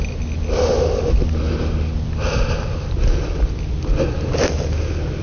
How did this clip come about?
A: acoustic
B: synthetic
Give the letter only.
A